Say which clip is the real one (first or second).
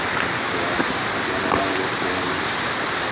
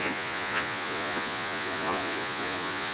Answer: first